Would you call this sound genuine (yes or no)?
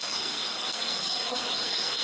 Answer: no